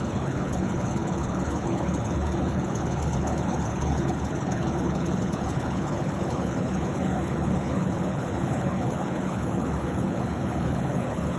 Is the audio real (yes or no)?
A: no